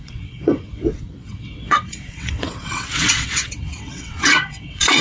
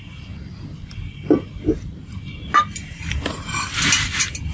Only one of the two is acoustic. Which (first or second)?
second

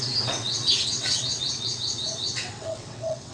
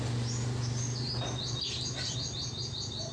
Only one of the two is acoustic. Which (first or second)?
second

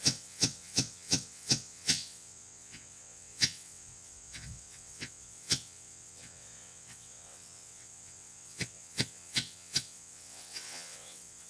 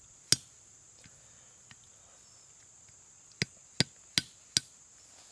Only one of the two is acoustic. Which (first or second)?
second